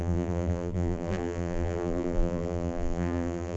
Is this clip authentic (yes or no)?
no